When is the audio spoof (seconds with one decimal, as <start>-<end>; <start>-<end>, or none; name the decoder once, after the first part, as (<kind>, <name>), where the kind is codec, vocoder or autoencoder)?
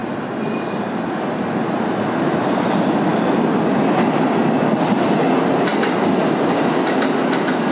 none